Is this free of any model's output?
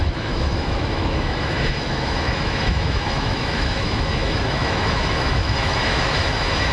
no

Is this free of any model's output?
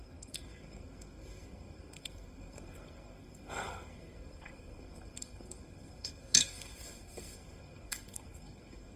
no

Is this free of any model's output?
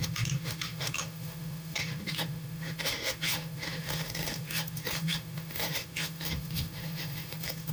no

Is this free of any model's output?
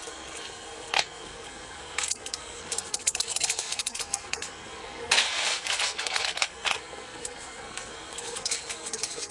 no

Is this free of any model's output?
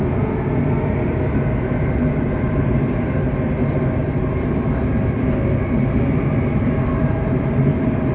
yes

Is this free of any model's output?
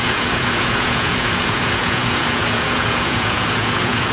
no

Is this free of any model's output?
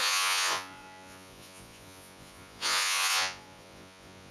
no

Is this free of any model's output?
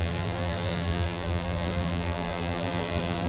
no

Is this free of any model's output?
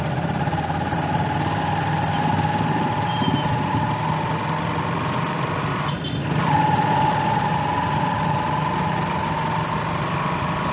yes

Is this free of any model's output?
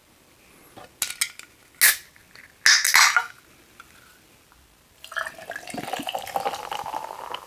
yes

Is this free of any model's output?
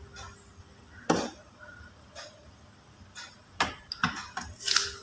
yes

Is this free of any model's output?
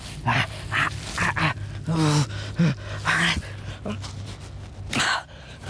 yes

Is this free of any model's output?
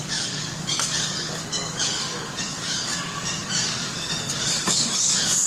no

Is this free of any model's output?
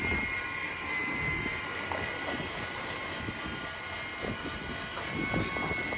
yes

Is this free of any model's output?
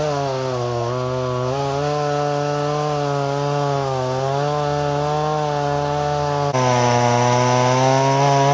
yes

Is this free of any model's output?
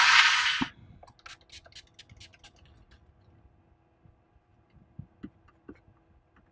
yes